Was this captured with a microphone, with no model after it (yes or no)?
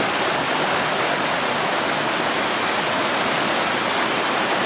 yes